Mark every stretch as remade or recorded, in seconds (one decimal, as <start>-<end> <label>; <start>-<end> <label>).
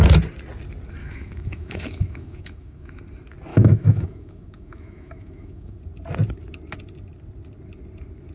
0.0-1.0 recorded; 1.0-3.0 remade; 3.0-3.5 recorded; 3.5-5.8 remade; 5.8-8.3 recorded